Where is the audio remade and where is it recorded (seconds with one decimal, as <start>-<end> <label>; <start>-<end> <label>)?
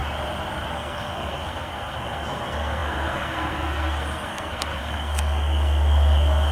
0.0-0.7 recorded; 0.7-6.5 remade